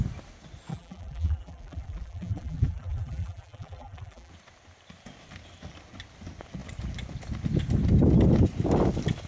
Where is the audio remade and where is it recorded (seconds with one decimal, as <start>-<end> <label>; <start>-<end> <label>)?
0.0-0.7 recorded; 0.7-4.3 remade; 4.3-9.3 recorded